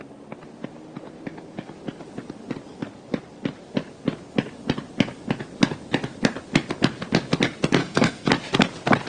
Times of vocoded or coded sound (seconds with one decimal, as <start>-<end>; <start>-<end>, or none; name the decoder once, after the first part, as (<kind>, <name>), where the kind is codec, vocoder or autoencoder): 7.8-8.3 (codec, SNAC)